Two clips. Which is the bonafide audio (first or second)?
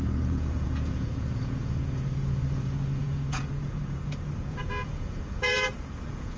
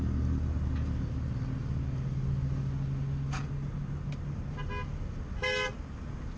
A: second